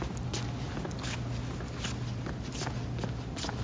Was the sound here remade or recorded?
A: recorded